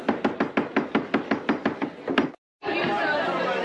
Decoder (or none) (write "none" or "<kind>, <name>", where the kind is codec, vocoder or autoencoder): none